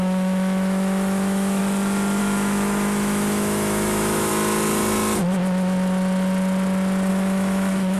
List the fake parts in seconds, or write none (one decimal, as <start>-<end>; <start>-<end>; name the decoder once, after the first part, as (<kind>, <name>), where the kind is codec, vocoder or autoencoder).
0.0-1.6 (autoencoder, DAC-VAE); 2.2-4.3; 7.1-8.0